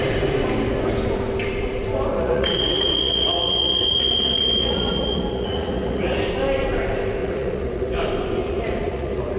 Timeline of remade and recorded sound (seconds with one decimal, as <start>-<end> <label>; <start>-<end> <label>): 0.0-2.1 recorded; 2.1-6.2 remade; 6.2-7.2 recorded; 7.2-8.0 remade; 8.0-8.4 recorded; 8.4-9.4 remade